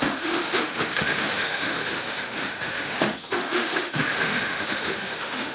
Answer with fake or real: fake